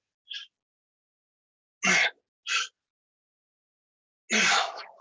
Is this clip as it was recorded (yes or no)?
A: yes